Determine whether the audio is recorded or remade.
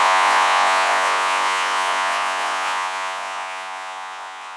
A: remade